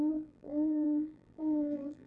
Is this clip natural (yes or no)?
no